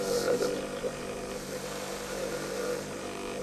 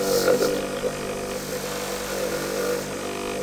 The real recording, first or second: second